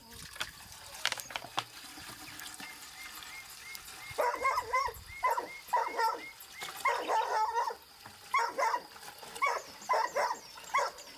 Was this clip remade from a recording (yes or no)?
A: no